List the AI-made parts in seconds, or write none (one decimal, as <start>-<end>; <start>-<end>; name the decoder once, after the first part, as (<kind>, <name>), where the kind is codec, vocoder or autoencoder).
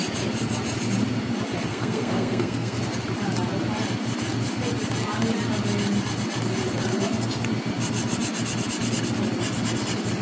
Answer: 1.7-2.8 (codec, SNAC)